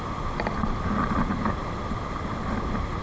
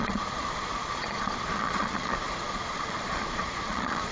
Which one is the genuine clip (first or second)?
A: first